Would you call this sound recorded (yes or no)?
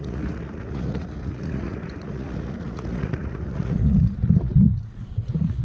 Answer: no